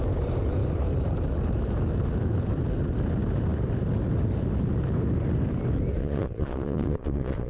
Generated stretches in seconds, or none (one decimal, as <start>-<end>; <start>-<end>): 6.0-7.5